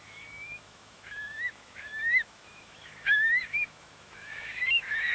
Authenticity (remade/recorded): remade